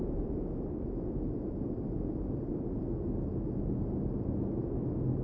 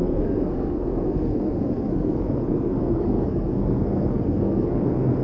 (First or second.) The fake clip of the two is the second